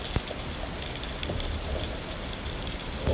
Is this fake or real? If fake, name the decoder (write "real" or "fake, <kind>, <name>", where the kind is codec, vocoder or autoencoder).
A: real